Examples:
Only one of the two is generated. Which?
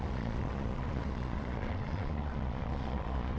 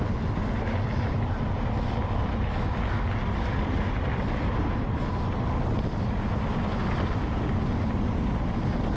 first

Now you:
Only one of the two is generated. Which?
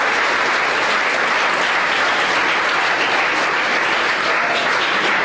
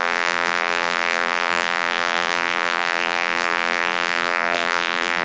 second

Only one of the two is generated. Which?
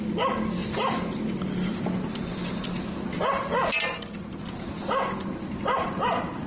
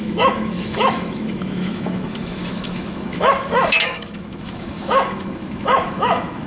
second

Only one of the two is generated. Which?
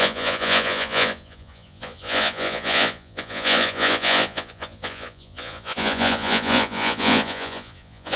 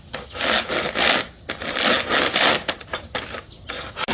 first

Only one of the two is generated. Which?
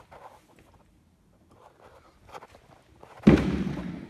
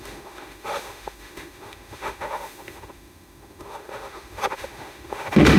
second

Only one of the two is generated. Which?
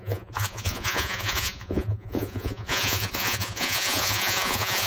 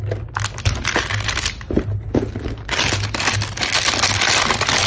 first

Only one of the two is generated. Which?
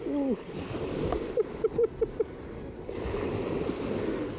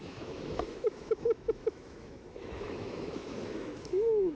second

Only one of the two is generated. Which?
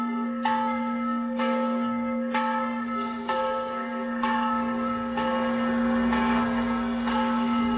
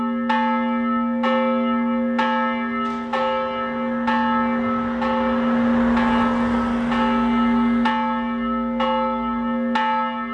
first